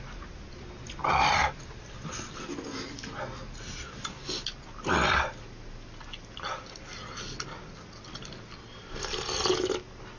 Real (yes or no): yes